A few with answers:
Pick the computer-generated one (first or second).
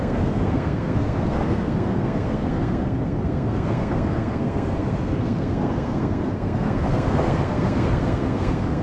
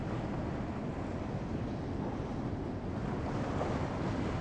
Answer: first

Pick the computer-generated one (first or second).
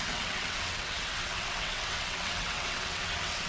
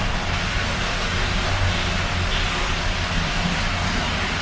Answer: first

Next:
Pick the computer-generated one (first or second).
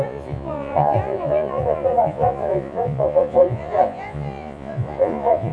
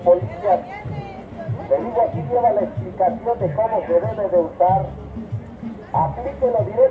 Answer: first